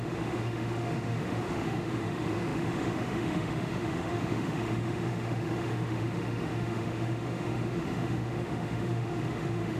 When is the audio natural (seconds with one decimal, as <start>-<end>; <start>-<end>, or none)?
none